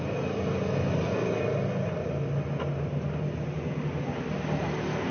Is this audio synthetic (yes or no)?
no